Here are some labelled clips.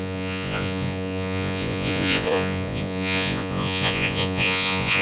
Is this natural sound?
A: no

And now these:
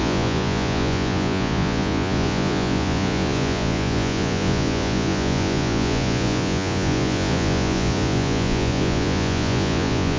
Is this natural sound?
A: no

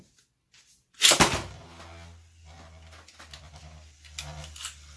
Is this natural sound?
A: yes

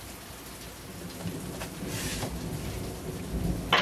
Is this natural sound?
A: yes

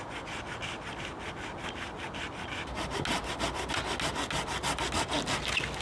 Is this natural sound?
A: yes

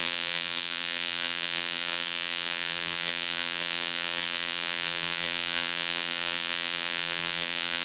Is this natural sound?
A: no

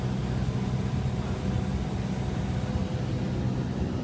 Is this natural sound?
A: yes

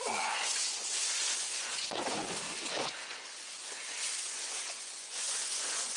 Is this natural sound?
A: no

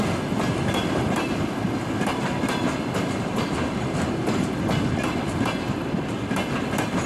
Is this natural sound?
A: yes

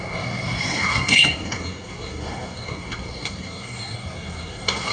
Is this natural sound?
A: no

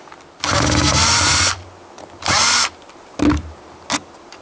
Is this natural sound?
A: yes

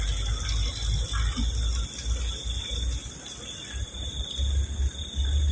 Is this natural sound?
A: yes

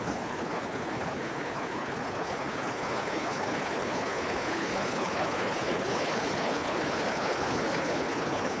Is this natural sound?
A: no